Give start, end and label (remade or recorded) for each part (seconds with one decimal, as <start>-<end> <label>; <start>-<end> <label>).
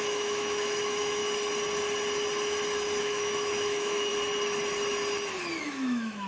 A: 0.0-1.2 remade; 1.2-3.0 recorded; 3.0-4.1 remade; 4.1-5.6 recorded; 5.6-6.3 remade